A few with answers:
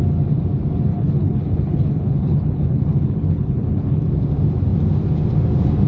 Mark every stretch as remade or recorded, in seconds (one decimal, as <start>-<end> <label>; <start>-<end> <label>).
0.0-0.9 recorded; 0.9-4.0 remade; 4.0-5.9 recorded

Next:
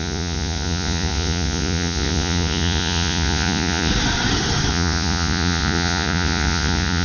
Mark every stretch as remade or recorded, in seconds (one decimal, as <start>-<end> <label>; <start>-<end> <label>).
0.0-3.9 remade; 3.9-4.7 recorded; 4.7-7.0 remade

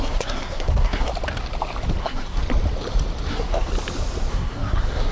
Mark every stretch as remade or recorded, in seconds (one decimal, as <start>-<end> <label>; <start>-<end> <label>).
0.0-1.1 remade; 1.1-2.0 recorded; 2.0-2.4 remade; 2.4-3.3 recorded; 3.3-3.7 remade; 3.7-4.3 recorded; 4.3-5.1 remade